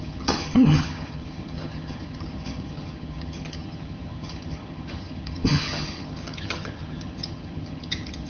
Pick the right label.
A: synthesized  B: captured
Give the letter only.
A